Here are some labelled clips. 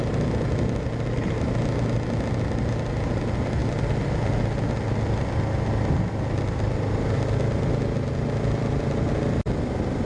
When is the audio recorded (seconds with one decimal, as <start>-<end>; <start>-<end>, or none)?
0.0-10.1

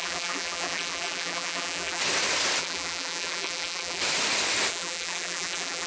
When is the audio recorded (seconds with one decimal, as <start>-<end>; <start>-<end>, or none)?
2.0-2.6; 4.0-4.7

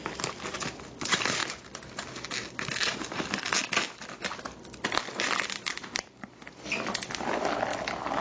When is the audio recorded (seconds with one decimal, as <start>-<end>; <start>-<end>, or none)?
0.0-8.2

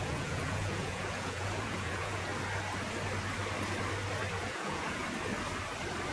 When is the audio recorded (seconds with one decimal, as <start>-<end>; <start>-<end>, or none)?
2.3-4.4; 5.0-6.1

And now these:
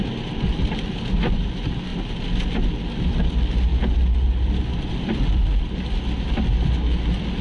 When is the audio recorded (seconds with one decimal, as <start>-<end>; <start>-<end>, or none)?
0.0-7.4